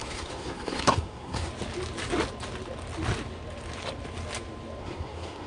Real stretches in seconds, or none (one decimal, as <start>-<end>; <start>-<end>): 1.5-4.8